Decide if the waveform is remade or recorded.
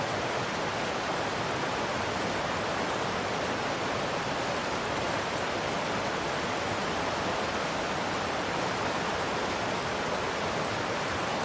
recorded